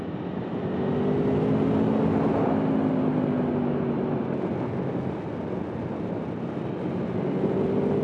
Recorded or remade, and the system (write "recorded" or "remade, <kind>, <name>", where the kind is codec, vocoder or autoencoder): recorded